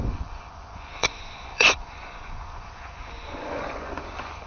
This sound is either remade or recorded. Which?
remade